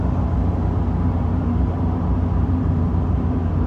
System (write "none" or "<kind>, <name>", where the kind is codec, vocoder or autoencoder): none